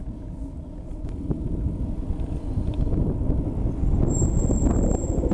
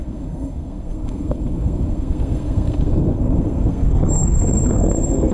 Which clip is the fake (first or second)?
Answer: second